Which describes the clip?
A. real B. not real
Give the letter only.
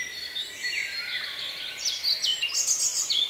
A